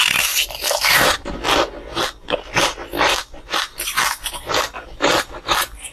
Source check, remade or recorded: recorded